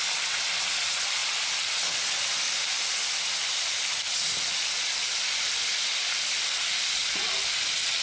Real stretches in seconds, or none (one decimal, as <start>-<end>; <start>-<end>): 0.0-8.0